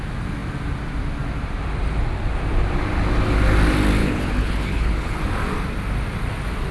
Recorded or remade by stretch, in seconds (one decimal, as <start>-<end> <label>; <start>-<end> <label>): 0.0-4.0 recorded; 4.0-5.2 remade; 5.2-6.7 recorded